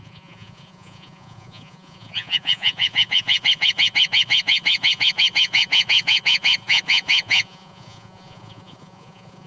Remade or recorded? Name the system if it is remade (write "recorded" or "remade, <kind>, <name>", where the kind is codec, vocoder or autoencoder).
remade, vocoder, Vocos